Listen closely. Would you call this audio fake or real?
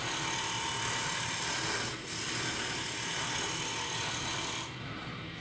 real